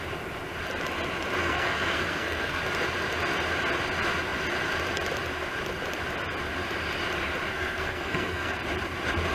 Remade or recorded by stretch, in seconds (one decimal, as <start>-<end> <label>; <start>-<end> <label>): 0.0-1.4 recorded; 1.4-2.6 remade; 2.6-7.5 recorded; 7.5-8.6 remade; 8.6-9.3 recorded

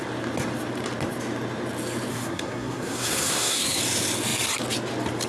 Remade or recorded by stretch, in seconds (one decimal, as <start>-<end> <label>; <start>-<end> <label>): 0.0-2.1 recorded; 2.1-3.8 remade; 3.8-5.3 recorded

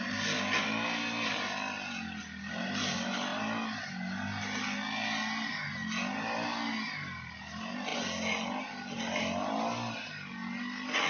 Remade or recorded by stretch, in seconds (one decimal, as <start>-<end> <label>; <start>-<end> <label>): 0.0-11.1 recorded

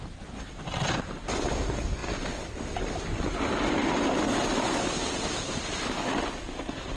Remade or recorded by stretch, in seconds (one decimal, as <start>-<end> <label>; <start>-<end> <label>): 0.0-7.0 recorded